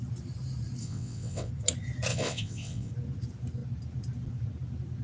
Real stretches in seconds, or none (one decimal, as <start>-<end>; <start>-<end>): 0.0-0.8; 1.5-2.1; 2.9-5.0